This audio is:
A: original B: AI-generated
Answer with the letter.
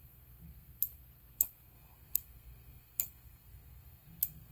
B